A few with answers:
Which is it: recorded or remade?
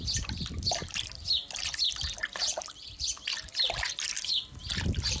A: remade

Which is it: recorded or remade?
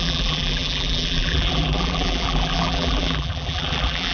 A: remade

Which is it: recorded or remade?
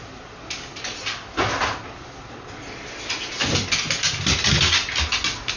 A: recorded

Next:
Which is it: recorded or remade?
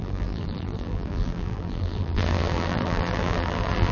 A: remade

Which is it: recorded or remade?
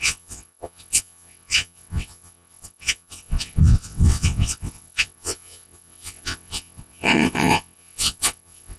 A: remade